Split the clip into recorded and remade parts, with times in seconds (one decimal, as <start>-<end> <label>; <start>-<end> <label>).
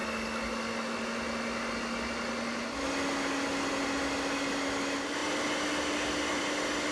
0.0-6.9 recorded